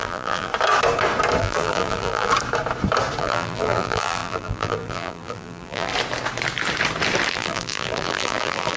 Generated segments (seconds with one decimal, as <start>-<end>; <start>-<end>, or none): 0.0-0.5; 1.4-2.3; 3.2-5.9; 7.3-8.8